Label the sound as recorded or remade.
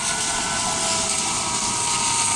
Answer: recorded